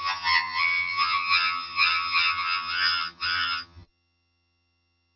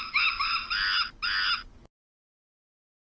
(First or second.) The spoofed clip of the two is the first